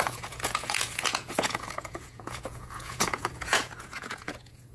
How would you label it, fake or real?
fake